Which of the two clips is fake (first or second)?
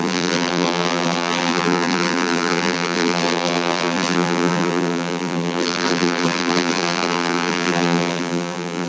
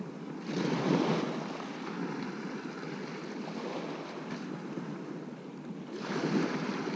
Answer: first